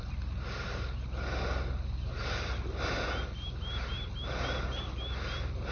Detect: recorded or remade recorded